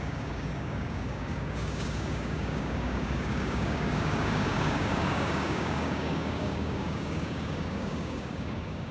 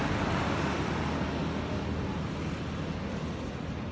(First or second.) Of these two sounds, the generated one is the first